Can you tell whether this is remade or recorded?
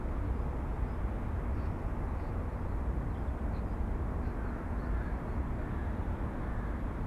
recorded